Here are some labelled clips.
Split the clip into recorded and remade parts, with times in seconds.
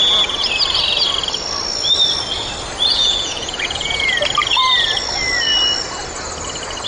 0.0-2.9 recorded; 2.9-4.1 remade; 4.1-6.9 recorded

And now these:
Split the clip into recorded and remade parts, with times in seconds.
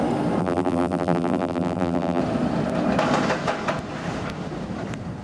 0.0-0.4 recorded; 0.4-2.2 remade; 2.2-5.2 recorded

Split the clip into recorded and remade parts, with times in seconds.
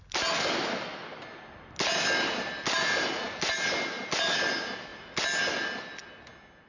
0.0-6.7 recorded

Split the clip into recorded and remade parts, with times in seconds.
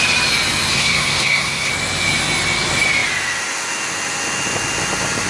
0.0-0.7 recorded; 0.7-1.7 remade; 1.7-5.3 recorded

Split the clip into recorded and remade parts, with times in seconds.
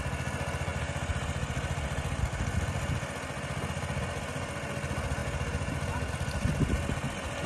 0.0-7.5 recorded